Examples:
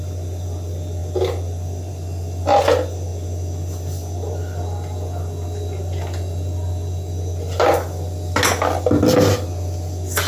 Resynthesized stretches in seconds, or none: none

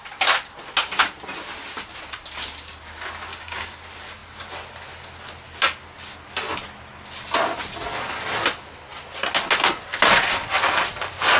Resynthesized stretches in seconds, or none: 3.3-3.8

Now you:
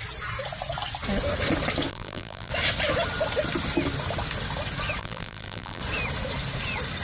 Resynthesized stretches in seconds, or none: 1.9-2.5; 5.0-5.8

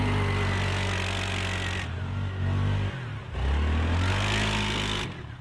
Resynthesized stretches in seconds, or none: none

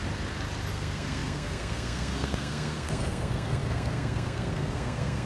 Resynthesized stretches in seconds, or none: 0.7-5.3

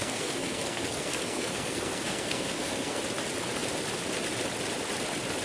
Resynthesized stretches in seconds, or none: 0.0-3.0